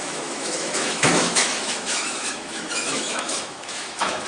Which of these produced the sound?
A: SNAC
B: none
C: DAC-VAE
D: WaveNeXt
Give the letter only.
C